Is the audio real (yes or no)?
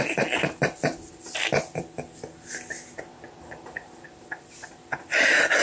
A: yes